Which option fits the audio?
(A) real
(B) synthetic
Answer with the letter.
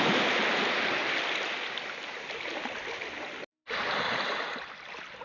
A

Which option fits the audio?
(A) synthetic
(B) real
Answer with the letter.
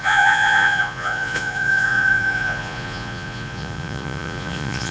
A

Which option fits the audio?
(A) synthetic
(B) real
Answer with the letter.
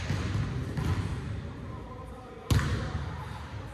B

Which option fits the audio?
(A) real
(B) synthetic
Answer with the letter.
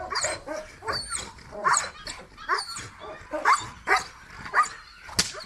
A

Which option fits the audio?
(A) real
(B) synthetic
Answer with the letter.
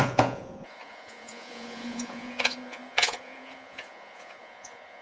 B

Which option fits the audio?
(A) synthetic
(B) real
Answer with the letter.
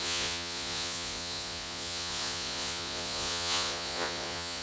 A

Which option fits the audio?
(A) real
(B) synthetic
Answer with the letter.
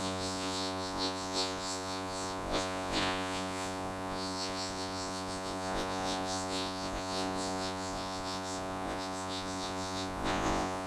B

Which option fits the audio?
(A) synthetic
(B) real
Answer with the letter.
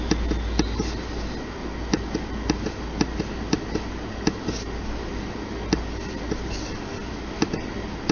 B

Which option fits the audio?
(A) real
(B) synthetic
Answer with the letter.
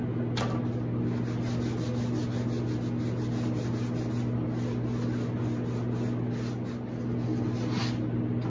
A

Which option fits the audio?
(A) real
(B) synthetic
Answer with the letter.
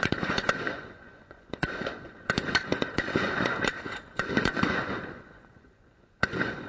B